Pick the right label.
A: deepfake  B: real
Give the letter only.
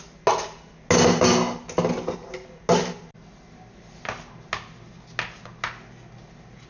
B